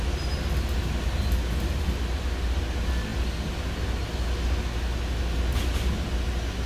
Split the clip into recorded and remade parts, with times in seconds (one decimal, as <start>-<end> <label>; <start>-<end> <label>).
0.0-6.7 recorded